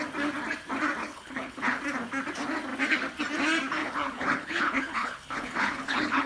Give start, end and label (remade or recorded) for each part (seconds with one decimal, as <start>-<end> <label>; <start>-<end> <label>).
0.0-1.0 recorded; 1.0-1.8 remade; 1.8-3.8 recorded; 3.8-6.3 remade